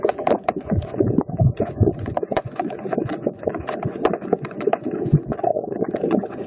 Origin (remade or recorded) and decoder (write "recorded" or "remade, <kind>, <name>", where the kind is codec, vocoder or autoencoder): remade, vocoder, Vocos